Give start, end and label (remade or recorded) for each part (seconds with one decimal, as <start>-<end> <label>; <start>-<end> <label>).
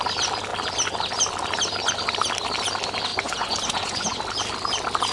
0.0-3.1 recorded; 3.1-4.2 remade; 4.2-5.1 recorded